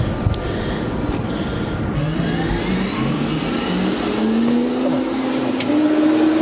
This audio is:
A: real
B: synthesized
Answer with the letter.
A